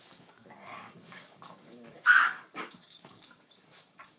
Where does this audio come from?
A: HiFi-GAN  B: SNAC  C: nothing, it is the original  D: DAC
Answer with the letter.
D